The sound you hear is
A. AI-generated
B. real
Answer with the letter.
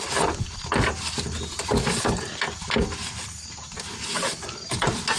B